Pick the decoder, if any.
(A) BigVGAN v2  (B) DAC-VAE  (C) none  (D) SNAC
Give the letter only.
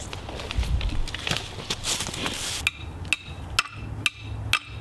C